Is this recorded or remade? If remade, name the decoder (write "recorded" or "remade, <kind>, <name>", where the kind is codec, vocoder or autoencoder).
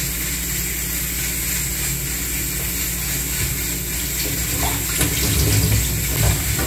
recorded